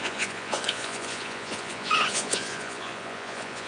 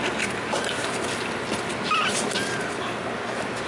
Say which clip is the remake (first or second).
first